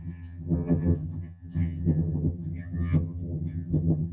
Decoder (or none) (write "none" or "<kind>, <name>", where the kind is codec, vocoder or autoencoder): vocoder, HiFi-GAN